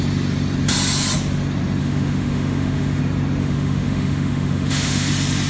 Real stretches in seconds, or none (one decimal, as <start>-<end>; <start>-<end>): 0.0-1.8; 3.0-3.4; 5.1-5.5